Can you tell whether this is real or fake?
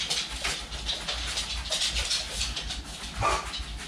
real